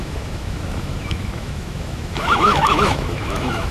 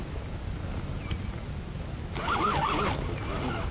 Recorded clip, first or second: second